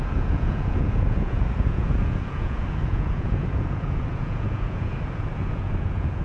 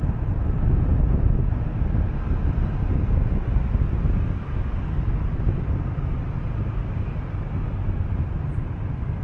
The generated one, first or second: first